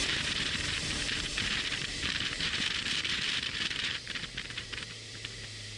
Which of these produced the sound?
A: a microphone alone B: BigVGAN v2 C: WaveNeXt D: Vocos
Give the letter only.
B